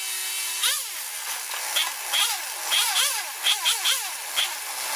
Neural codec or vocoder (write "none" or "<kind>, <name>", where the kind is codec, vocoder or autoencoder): none